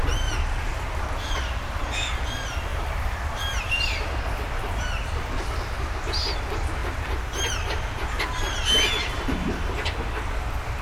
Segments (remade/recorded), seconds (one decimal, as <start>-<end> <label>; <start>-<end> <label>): 0.0-2.7 recorded; 2.7-5.6 remade; 5.6-6.8 recorded; 6.8-9.6 remade; 9.6-10.8 recorded